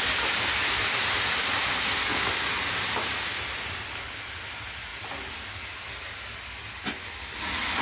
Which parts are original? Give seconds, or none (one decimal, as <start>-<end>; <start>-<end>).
0.0-7.8